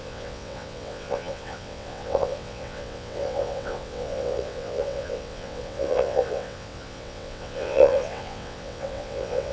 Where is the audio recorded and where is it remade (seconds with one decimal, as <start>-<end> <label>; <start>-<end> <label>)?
0.0-9.5 remade